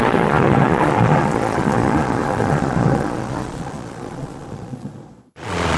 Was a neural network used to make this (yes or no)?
yes